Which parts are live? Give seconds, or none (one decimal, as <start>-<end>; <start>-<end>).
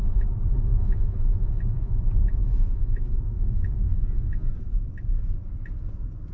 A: 0.0-0.7; 4.5-6.3